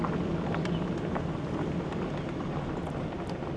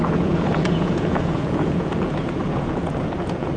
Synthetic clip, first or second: second